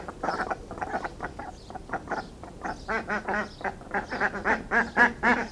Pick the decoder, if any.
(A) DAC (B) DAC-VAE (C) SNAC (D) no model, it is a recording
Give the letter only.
D